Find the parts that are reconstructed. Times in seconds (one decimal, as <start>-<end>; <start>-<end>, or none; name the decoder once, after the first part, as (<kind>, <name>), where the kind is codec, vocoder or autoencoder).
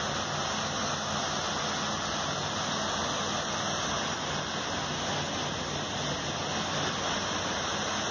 none